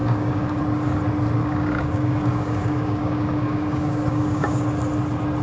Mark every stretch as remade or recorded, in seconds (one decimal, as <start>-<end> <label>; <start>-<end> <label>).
0.0-0.6 remade; 0.6-1.4 recorded; 1.4-4.6 remade; 4.6-5.4 recorded